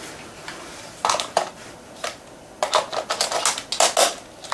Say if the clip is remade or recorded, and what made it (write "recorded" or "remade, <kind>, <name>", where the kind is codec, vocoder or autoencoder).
recorded